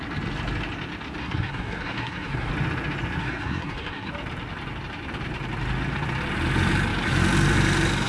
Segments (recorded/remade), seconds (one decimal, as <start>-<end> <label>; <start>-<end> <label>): 0.0-1.2 recorded; 1.2-2.5 remade; 2.5-3.2 recorded; 3.2-4.1 remade; 4.1-8.1 recorded